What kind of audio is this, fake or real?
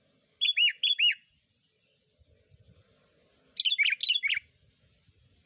real